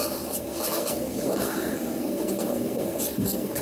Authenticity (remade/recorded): remade